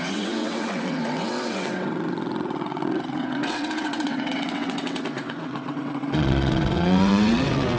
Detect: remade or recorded remade